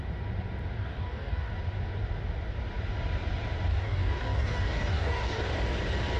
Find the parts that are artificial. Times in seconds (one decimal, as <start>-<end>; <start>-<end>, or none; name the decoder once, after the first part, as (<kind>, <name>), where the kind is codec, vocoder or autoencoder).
0.8-1.5 (codec, DAC); 3.7-5.4